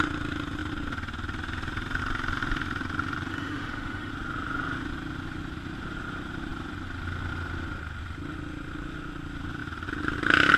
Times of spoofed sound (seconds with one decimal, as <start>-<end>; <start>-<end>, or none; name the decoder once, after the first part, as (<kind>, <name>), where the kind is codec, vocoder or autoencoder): 3.3-4.1 (autoencoder, DAC-VAE)